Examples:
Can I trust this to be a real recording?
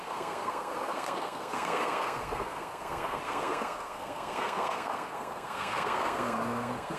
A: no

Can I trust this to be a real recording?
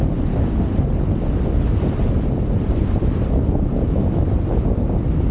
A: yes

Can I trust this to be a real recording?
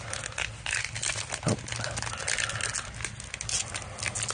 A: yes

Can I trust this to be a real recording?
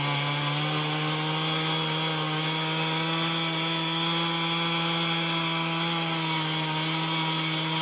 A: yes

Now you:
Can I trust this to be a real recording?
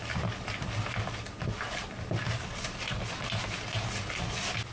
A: yes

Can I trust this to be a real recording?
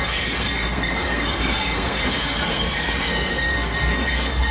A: no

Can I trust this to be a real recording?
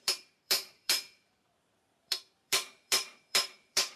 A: no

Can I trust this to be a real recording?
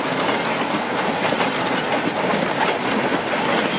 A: yes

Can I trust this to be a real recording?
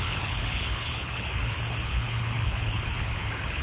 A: no